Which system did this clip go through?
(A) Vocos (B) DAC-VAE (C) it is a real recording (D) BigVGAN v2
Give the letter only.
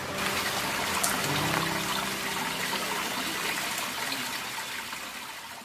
C